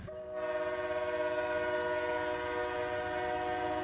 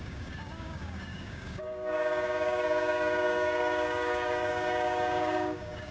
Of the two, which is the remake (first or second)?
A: second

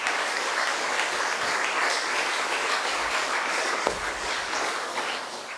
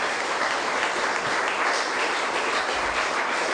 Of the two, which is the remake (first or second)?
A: first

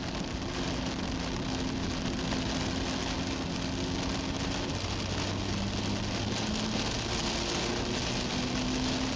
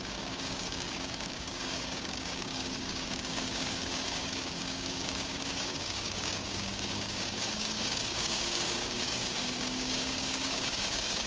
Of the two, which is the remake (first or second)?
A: second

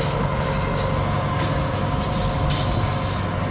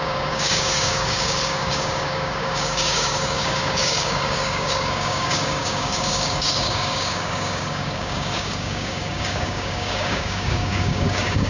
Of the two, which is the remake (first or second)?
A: second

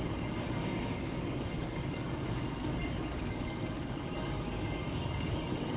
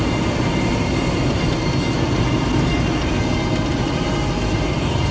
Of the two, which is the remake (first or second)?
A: first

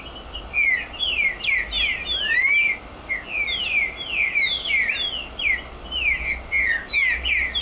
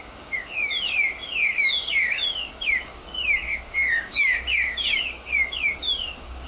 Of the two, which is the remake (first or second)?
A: second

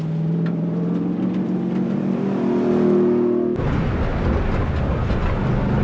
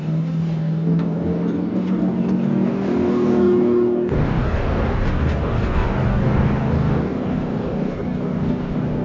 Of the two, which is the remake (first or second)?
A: second